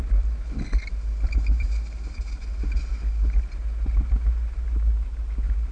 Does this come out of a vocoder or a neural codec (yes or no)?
no